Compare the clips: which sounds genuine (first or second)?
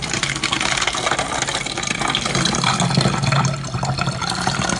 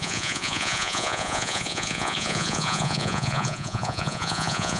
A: first